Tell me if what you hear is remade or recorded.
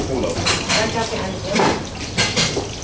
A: remade